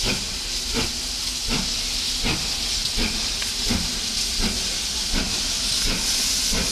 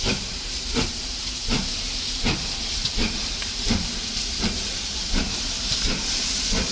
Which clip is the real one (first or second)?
first